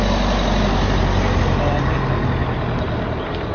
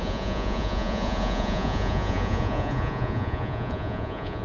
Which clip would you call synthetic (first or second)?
second